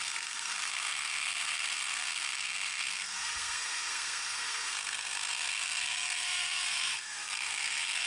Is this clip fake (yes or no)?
yes